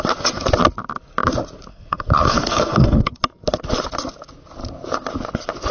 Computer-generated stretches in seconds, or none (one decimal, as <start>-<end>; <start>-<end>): 1.7-3.2